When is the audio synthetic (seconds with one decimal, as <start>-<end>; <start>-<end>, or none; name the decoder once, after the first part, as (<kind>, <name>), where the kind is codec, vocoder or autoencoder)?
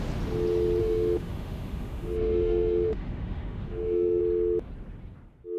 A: 0.8-4.2 (autoencoder, DAC-VAE)